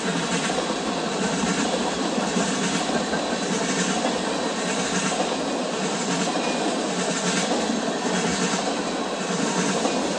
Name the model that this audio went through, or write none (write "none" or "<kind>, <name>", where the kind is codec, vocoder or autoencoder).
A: none